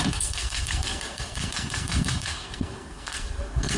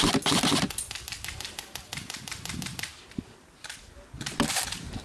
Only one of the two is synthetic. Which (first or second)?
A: first